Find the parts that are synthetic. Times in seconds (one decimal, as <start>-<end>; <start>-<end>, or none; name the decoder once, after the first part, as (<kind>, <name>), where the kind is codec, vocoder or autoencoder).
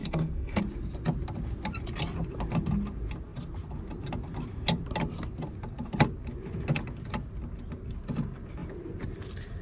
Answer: 0.0-0.6 (codec, SNAC)